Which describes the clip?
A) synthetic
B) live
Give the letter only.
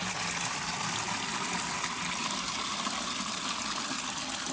B